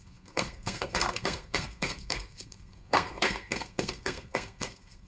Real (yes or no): no